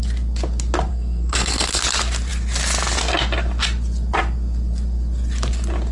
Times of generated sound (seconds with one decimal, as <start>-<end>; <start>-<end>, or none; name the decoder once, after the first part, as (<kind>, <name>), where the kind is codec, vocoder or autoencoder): 0.9-1.8 (codec, SNAC)